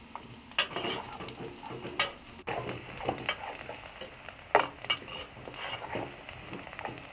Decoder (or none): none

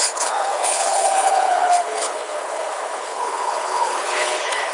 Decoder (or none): codec, HILCodec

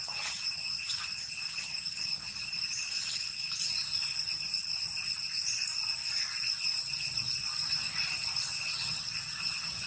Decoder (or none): none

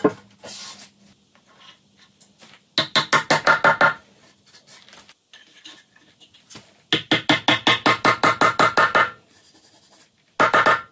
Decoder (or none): none